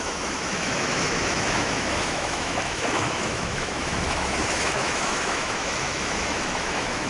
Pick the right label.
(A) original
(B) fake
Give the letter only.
B